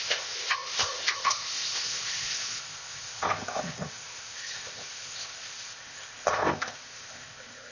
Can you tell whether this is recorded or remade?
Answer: remade